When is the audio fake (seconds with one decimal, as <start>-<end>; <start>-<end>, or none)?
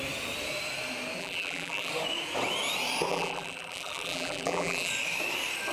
1.2-1.9; 3.1-4.9